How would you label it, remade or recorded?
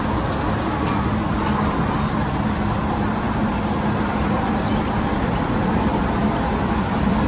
recorded